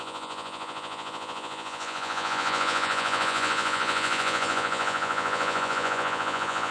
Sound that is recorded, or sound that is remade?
remade